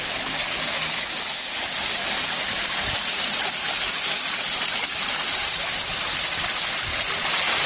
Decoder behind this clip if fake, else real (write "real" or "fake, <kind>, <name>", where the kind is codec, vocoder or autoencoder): real